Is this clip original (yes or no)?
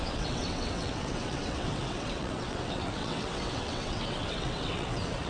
no